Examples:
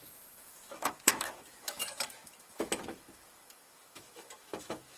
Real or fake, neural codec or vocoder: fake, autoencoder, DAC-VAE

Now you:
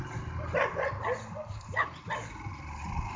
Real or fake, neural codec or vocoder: real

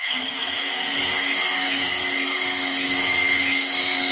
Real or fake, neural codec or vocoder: fake, autoencoder, DAC-VAE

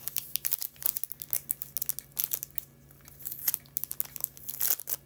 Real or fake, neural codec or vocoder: real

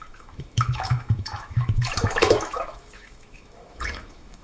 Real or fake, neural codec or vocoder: fake, autoencoder, DAC-VAE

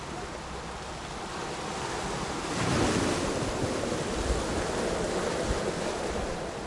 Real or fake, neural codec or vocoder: real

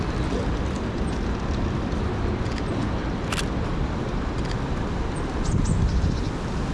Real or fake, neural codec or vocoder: real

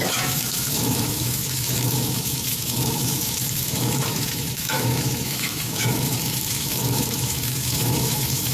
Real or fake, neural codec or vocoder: fake, autoencoder, DAC-VAE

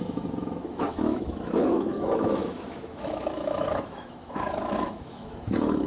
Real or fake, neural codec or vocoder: fake, autoencoder, DAC-VAE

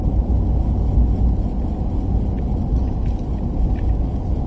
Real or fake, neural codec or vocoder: real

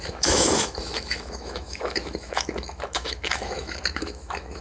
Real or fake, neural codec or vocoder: fake, autoencoder, DAC-VAE